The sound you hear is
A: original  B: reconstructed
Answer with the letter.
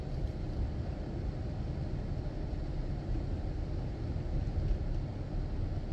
A